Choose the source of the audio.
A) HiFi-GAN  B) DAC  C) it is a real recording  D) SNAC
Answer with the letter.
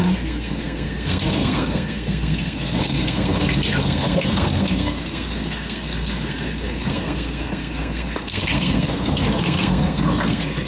D